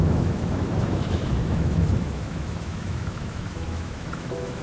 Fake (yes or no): yes